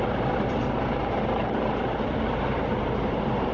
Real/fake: fake